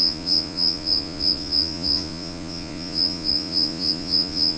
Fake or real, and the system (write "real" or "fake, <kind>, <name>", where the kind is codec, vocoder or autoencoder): fake, vocoder, Vocos